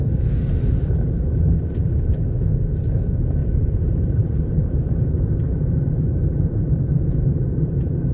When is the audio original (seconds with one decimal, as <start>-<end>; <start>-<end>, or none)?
0.0-3.4